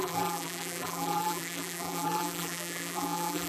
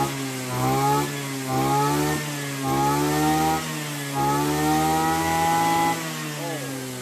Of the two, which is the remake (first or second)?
first